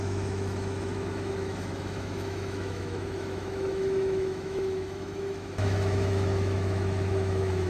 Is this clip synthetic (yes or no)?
yes